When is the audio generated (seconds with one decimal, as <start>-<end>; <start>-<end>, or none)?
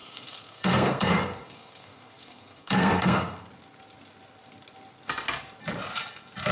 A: 0.0-3.5